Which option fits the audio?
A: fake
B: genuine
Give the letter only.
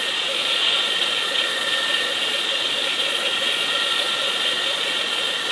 A